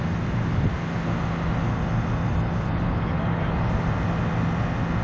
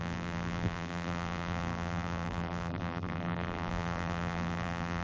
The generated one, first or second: second